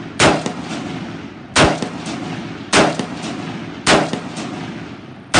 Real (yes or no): yes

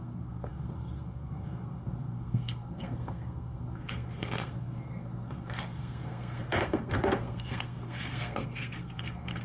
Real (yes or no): no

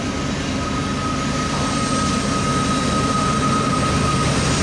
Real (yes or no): yes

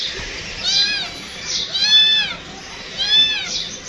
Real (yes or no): yes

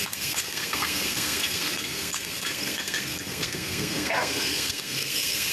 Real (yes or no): no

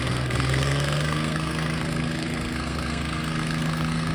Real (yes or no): no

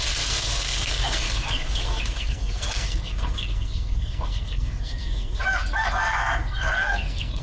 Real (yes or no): no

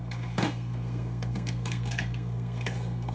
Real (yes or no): no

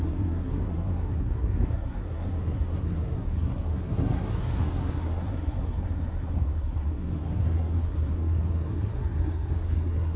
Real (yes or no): no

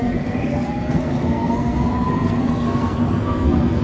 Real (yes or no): no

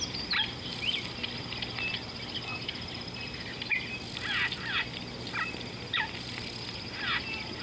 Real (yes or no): yes